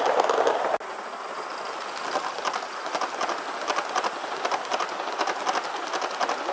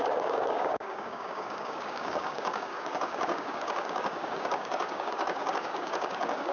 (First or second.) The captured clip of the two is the first